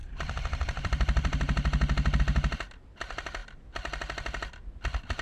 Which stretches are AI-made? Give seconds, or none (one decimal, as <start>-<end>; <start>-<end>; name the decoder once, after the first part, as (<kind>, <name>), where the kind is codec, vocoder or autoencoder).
0.0-2.2 (vocoder, BigVGAN v2)